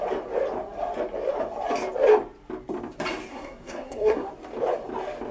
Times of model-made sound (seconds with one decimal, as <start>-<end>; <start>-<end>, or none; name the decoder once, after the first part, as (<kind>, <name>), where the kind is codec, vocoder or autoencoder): 3.3-4.3 (codec, SNAC)